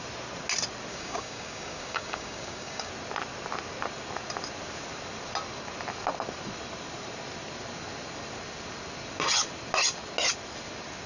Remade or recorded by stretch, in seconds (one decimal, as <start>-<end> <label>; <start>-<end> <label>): 0.0-0.9 recorded; 0.9-2.9 remade; 2.9-11.1 recorded